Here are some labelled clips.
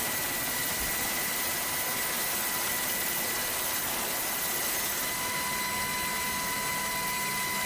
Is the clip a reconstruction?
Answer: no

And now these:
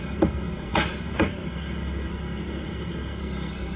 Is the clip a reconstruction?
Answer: yes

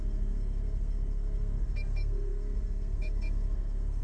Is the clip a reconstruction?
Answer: yes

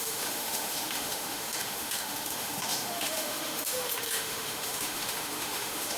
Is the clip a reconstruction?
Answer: yes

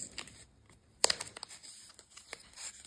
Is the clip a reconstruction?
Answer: no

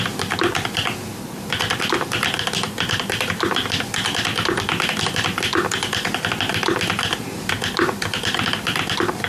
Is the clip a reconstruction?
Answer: no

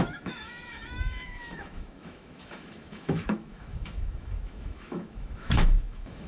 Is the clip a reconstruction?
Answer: yes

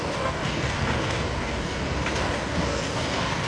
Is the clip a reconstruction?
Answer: yes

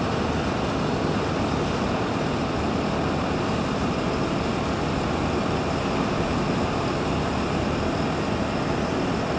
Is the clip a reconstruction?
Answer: no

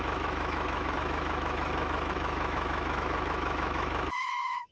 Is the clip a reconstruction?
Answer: yes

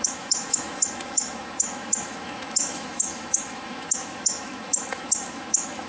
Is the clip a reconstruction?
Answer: yes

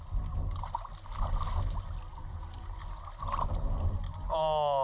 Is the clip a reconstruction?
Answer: no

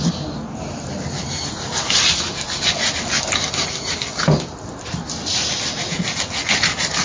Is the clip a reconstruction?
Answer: no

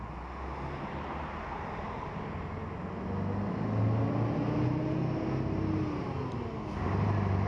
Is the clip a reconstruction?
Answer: no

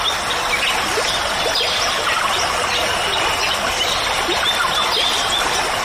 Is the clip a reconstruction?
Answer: no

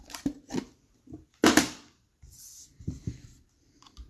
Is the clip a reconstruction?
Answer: yes